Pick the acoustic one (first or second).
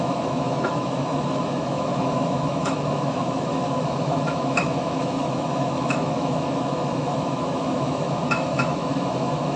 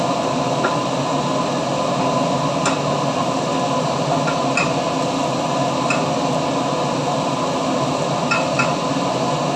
second